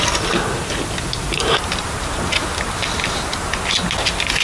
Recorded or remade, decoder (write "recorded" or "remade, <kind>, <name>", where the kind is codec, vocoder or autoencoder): recorded